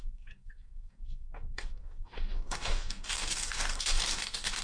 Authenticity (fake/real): fake